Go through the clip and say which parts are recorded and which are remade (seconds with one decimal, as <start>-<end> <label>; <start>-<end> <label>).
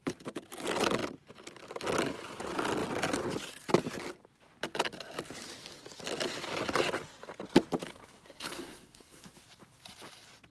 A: 0.0-8.0 recorded; 8.0-9.3 remade; 9.3-10.5 recorded